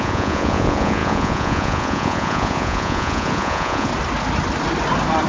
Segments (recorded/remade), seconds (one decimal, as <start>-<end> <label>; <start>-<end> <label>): 0.0-3.9 remade; 3.9-5.3 recorded